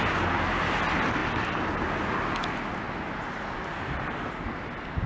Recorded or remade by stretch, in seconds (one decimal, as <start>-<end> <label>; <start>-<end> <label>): 0.0-5.1 recorded